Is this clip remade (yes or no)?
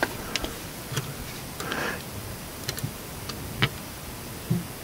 no